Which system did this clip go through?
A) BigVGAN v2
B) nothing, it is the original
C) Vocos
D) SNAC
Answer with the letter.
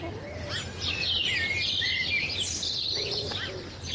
B